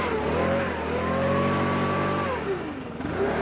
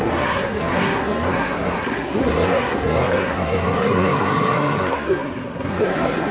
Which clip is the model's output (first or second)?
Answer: second